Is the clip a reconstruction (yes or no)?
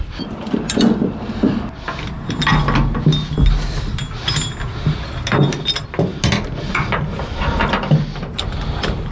no